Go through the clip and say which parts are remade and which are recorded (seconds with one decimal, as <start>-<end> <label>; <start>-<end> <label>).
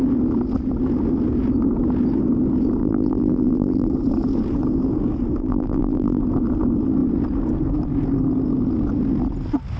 0.0-2.8 recorded; 2.8-3.9 remade; 3.9-5.4 recorded; 5.4-6.2 remade; 6.2-9.8 recorded